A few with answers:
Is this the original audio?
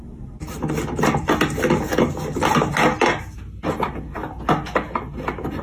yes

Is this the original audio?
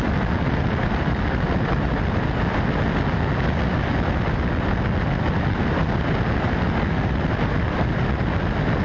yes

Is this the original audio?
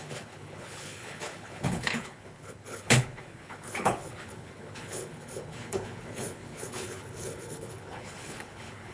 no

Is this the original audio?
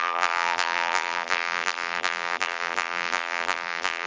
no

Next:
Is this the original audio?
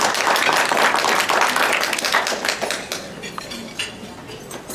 yes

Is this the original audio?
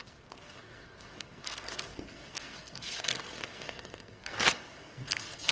no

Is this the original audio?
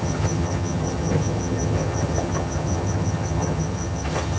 no